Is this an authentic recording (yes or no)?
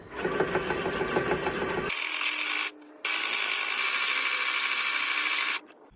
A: yes